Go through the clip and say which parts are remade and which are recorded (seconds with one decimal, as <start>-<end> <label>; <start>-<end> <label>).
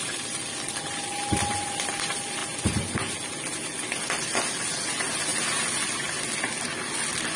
0.0-7.4 recorded